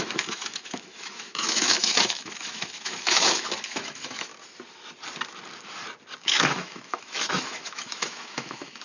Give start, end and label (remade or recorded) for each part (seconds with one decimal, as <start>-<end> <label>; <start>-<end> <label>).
0.0-4.3 remade; 4.3-6.2 recorded; 6.2-8.8 remade